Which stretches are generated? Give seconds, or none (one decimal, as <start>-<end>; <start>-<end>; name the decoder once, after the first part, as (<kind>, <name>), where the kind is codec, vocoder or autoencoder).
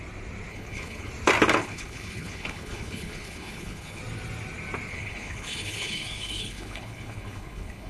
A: 0.5-1.1 (codec, HILCodec); 1.6-4.0; 4.9-7.9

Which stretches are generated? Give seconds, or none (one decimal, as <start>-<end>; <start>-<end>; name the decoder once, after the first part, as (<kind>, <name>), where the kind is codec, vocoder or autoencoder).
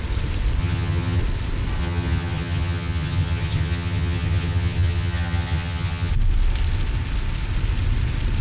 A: 0.6-1.2 (vocoder, HiFi-GAN); 1.8-6.1